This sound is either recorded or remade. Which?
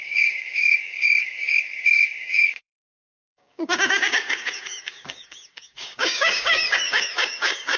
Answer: remade